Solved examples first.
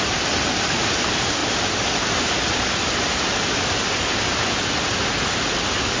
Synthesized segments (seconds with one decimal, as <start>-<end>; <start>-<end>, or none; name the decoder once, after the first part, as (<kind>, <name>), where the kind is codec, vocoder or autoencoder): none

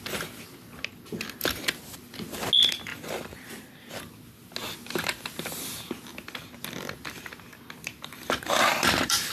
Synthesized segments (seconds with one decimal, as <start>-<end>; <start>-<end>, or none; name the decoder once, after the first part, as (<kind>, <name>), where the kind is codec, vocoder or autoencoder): 2.9-3.9 (vocoder, BigVGAN v2); 8.7-9.3

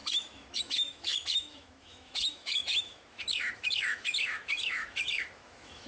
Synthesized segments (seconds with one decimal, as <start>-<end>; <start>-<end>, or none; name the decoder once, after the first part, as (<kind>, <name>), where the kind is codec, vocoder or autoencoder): 0.0-5.9 (autoencoder, DAC-VAE)